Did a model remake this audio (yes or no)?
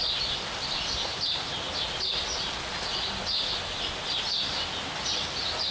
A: no